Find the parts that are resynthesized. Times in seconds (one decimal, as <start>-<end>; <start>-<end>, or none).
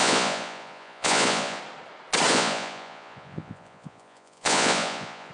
0.0-1.6; 2.3-5.3